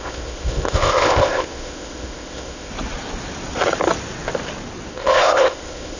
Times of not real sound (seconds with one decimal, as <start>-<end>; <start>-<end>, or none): 0.0-2.7; 4.9-6.0